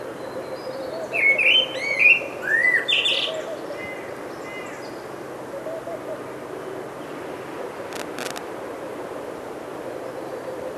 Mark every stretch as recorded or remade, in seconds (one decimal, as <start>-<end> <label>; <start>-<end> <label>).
0.0-8.9 recorded; 8.9-9.5 remade; 9.5-10.8 recorded